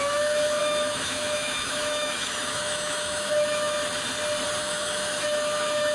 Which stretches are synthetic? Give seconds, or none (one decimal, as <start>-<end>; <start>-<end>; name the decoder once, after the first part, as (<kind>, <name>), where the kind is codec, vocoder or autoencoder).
0.0-3.8 (autoencoder, DAC-VAE); 4.6-5.9